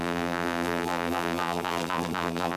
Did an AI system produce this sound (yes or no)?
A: yes